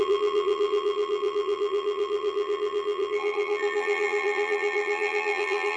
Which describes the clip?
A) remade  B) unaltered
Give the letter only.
A